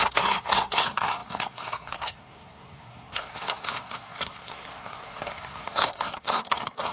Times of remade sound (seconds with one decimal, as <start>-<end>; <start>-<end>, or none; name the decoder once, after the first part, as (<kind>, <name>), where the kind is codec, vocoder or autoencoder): 0.0-6.9 (codec, SNAC)